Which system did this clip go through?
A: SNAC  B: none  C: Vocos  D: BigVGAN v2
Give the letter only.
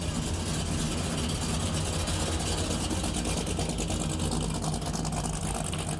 B